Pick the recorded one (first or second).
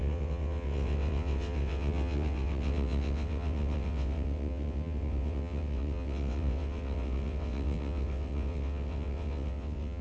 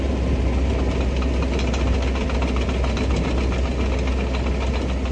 second